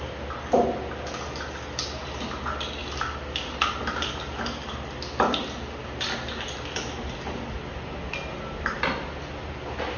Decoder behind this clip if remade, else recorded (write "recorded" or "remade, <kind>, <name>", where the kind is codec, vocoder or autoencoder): recorded